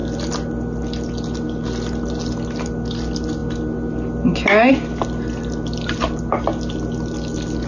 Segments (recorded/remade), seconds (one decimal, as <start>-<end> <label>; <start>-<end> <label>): 0.0-7.7 recorded